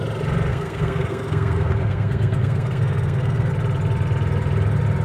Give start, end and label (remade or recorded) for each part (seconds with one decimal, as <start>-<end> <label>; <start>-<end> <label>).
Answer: 0.0-0.5 recorded; 0.5-3.5 remade; 3.5-5.0 recorded